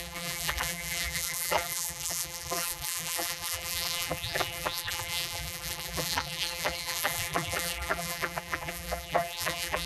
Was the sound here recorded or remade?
remade